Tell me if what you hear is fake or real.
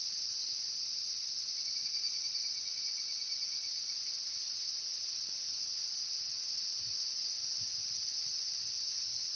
real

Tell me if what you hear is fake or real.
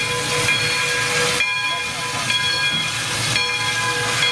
real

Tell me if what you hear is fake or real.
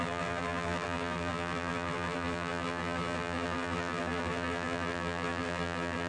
fake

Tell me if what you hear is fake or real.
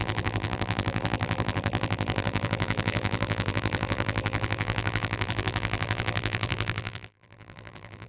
fake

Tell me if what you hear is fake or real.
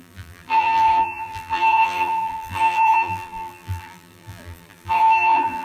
fake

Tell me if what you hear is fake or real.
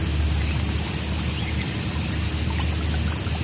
real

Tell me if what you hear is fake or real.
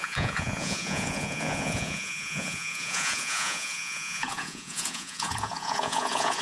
fake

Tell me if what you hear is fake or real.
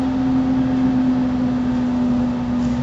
real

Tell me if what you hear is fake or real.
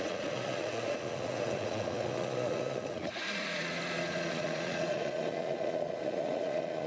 fake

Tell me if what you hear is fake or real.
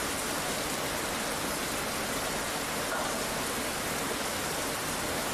real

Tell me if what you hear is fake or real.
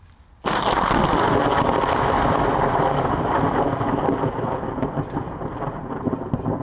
real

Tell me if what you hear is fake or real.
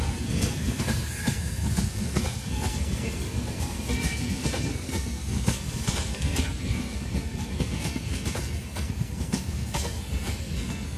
fake